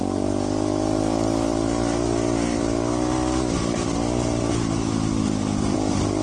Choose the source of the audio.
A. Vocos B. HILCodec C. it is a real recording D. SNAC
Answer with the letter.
C